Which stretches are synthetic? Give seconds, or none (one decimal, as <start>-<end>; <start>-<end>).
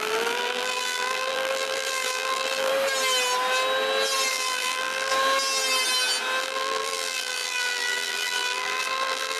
0.0-2.7; 4.3-5.1; 6.4-9.4